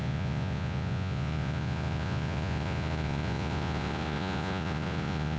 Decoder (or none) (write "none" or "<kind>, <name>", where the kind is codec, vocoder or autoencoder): vocoder, Vocos